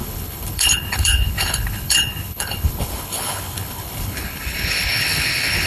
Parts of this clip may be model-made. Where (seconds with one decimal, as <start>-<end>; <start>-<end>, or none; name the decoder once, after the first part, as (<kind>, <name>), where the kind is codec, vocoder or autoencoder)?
0.0-5.7 (codec, HILCodec)